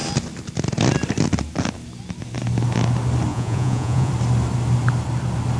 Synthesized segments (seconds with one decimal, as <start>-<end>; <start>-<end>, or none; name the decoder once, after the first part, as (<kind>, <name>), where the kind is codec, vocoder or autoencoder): 3.3-4.1 (vocoder, Vocos)